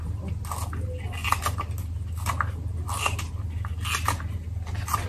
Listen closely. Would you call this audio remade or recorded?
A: recorded